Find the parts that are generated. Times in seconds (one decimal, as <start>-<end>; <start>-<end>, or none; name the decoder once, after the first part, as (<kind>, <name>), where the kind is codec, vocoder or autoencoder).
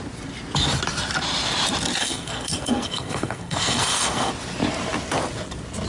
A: 2.0-4.3 (codec, SNAC)